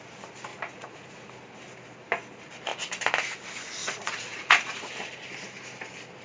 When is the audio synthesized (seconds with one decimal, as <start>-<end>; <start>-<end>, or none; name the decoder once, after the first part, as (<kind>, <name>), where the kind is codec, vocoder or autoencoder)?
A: 0.5-1.3 (vocoder, Vocos); 3.8-4.9